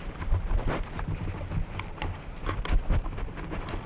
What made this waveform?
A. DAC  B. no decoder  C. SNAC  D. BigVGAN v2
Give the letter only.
B